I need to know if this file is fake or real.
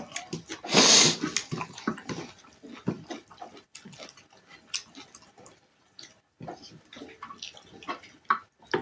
real